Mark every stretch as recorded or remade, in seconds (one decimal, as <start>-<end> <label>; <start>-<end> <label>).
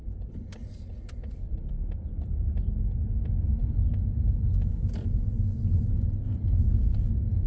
0.0-7.5 recorded